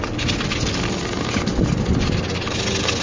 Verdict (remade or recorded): recorded